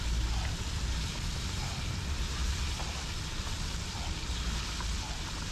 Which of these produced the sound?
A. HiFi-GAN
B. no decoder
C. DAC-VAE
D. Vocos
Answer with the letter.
B